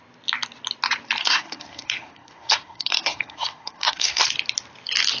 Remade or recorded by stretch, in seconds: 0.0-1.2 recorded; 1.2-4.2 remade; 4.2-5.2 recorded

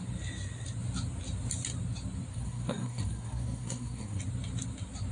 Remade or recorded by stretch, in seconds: 0.0-2.3 recorded; 2.3-4.2 remade; 4.2-5.1 recorded

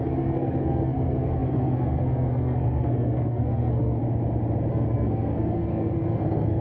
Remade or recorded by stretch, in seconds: 0.0-4.0 remade; 4.0-4.7 recorded; 4.7-6.6 remade